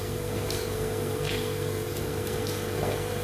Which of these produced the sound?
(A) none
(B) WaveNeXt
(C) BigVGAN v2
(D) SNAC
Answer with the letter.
D